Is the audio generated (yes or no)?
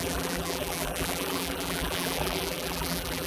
yes